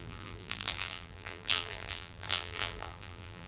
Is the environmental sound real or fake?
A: fake